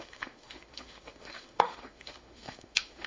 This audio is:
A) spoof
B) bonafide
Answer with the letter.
A